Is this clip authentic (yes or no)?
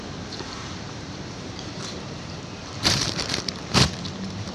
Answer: no